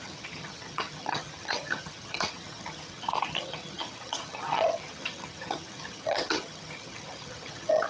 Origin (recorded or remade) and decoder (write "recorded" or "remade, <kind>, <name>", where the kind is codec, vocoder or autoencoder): remade, vocoder, HiFi-GAN